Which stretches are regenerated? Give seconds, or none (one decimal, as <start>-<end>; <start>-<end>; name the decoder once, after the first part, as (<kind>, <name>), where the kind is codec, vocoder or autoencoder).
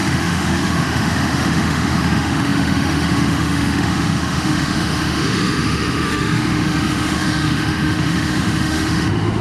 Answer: 0.0-9.4 (autoencoder, DAC-VAE)